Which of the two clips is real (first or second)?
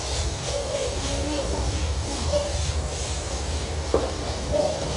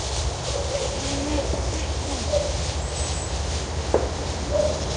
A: second